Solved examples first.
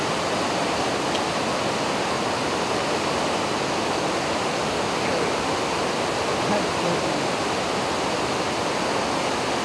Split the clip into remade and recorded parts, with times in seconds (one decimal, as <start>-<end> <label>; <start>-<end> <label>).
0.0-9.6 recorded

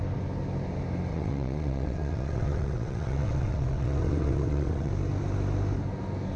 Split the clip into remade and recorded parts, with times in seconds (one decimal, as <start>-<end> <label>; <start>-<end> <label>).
0.0-1.1 recorded; 1.1-4.9 remade; 4.9-6.4 recorded

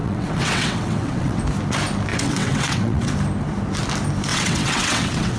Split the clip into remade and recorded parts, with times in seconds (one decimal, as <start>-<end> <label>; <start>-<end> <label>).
0.0-1.4 remade; 1.4-2.1 recorded; 2.1-3.1 remade; 3.1-4.3 recorded; 4.3-5.4 remade